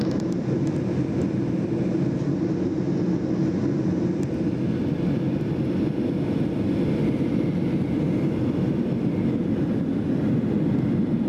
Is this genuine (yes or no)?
yes